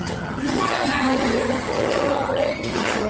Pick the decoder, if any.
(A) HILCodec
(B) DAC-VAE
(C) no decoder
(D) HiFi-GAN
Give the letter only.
D